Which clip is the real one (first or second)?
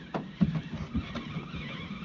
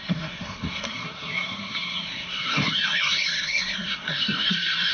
first